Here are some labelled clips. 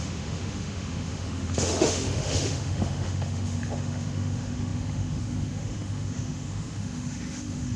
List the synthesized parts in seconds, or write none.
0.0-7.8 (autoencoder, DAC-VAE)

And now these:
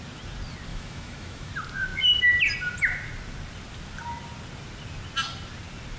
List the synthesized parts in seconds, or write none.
0.7-1.5 (autoencoder, DAC-VAE)

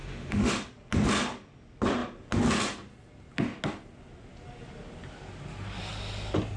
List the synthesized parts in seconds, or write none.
0.0-0.5 (autoencoder, DAC-VAE)